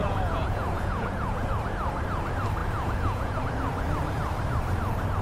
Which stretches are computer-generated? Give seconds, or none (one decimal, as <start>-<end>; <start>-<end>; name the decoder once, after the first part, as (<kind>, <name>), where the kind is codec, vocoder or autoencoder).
0.0-1.5 (vocoder, Vocos); 2.6-3.4